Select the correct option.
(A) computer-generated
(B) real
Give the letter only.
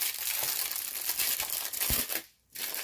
B